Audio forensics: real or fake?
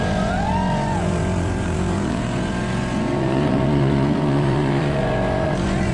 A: fake